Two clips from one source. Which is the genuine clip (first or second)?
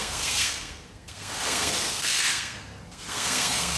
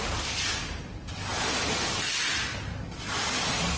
second